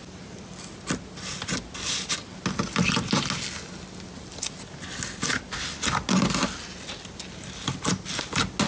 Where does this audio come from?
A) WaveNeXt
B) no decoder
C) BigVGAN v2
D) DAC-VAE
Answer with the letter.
B